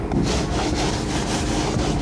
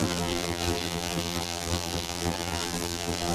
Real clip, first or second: first